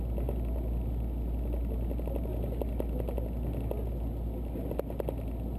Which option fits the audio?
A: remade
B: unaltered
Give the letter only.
B